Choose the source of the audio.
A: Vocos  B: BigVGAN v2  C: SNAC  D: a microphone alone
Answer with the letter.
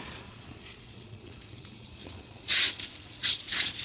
A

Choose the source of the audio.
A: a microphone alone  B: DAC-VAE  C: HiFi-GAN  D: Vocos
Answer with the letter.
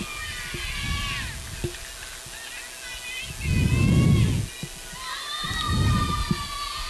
A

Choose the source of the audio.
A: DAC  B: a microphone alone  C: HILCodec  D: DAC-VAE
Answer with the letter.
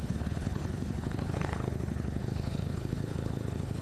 C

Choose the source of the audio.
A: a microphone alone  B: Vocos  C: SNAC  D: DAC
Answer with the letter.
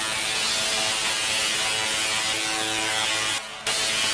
A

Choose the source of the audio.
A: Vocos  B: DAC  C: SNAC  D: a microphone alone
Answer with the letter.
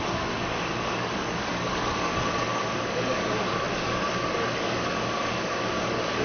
B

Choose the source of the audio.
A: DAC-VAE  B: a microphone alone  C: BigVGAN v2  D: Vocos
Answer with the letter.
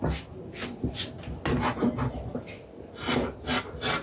B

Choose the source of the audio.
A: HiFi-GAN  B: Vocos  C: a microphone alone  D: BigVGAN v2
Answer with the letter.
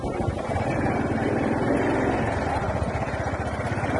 C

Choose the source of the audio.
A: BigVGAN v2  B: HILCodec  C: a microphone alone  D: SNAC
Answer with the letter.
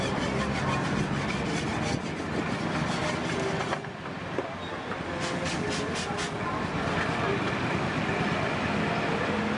C